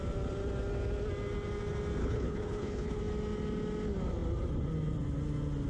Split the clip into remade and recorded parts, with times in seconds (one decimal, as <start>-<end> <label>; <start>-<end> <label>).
0.0-2.0 recorded; 2.0-3.0 remade; 3.0-5.7 recorded